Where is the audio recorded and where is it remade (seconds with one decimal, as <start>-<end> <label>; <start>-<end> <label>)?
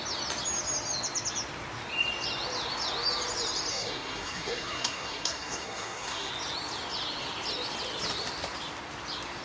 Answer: 0.0-3.7 recorded; 3.7-6.3 remade; 6.3-9.4 recorded